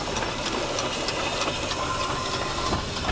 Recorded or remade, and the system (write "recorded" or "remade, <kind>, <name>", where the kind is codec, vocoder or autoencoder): recorded